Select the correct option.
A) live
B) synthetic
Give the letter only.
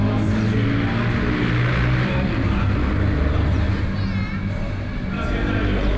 A